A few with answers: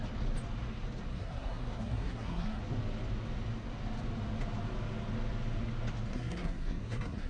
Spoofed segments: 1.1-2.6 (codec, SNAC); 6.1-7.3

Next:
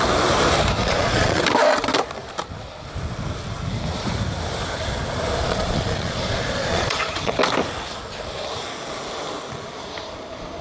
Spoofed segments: 0.8-1.4 (vocoder, Vocos); 5.4-7.3

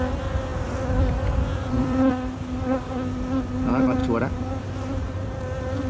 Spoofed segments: 0.5-2.1 (vocoder, BigVGAN v2); 4.0-5.4

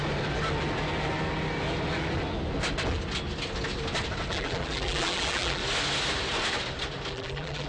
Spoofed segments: 4.3-5.6 (vocoder, BigVGAN v2); 7.1-7.7

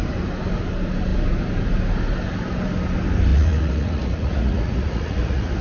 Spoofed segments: 3.3-5.6 (vocoder, Vocos)

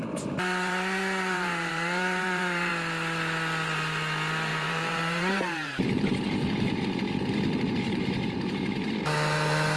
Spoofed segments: 0.0-2.7 (vocoder, BigVGAN v2); 4.5-8.9